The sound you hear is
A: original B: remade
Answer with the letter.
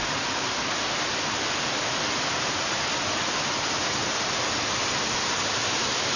A